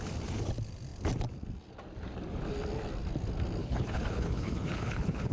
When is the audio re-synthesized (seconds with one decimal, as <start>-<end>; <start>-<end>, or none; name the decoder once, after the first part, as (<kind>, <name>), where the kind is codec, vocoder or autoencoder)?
3.6-5.3 (codec, HILCodec)

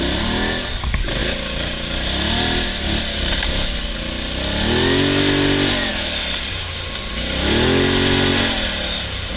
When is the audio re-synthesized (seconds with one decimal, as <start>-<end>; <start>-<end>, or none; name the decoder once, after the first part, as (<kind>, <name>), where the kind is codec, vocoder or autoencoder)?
none

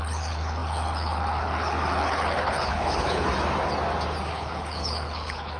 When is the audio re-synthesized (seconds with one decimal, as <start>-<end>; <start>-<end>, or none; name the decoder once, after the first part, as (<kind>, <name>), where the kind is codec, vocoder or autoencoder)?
0.0-3.3 (codec, HILCodec); 4.3-5.6